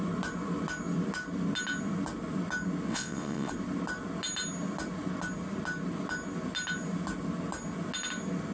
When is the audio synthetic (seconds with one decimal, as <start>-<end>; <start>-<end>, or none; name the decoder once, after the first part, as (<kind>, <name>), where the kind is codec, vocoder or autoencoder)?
2.9-3.5 (vocoder, WaveNeXt)